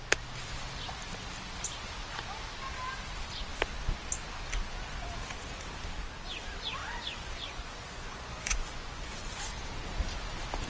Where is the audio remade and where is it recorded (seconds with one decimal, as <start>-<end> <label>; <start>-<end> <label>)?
0.0-6.8 recorded; 6.8-9.5 remade; 9.5-10.7 recorded